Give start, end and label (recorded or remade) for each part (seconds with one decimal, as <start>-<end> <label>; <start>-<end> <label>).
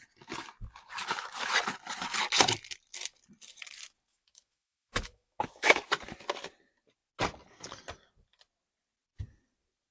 0.0-4.1 recorded; 4.1-5.9 remade; 5.9-9.9 recorded